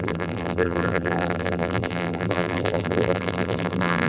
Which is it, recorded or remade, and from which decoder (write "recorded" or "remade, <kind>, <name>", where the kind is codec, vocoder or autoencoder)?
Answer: remade, vocoder, BigVGAN v2